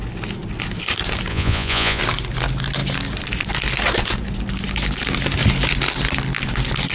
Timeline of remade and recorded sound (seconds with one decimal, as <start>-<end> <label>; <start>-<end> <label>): 0.0-1.3 recorded; 1.3-2.0 remade; 2.0-6.9 recorded